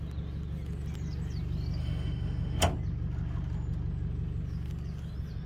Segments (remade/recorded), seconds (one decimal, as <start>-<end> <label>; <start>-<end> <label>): 0.0-1.8 recorded; 1.8-2.6 remade; 2.6-5.5 recorded